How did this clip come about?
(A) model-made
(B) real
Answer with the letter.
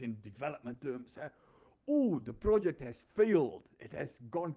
A